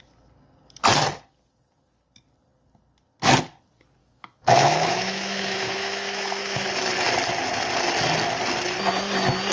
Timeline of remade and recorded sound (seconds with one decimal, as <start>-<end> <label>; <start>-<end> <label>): 0.0-4.0 recorded; 4.0-6.7 remade; 6.7-9.5 recorded